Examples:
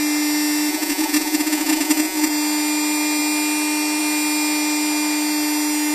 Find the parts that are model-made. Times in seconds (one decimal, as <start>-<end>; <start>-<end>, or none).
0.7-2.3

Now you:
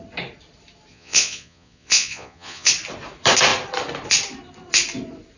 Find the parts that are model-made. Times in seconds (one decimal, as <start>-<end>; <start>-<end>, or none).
0.9-2.7

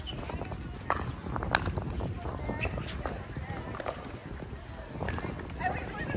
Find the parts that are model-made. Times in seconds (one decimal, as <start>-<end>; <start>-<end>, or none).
none

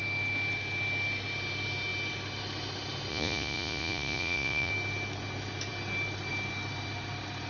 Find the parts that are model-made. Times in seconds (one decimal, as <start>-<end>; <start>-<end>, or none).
3.1-4.7